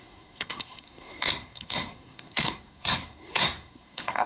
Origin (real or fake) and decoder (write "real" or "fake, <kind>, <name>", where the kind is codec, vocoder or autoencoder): fake, codec, SNAC